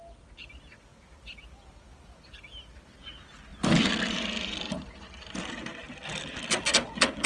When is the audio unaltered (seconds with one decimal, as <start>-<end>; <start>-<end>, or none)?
0.0-0.9; 1.6-3.5; 6.4-7.3